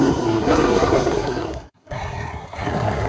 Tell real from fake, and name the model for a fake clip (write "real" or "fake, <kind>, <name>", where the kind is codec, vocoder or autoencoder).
fake, codec, SNAC